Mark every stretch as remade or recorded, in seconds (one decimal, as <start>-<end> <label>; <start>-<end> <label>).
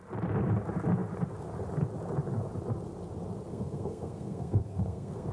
0.0-3.5 recorded; 3.5-5.3 remade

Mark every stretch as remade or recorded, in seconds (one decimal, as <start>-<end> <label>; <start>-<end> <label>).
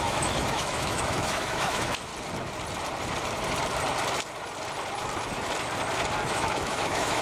0.0-2.1 remade; 2.1-6.3 recorded; 6.3-7.2 remade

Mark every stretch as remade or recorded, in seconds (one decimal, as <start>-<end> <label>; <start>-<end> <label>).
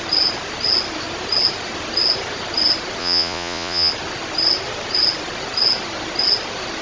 0.0-3.0 recorded; 3.0-3.9 remade; 3.9-6.8 recorded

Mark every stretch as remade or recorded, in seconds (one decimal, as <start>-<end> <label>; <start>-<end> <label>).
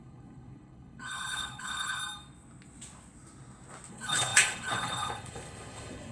0.0-2.0 remade; 2.0-3.9 recorded; 3.9-6.1 remade